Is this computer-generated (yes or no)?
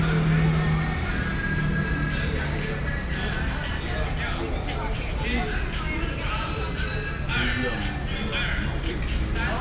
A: no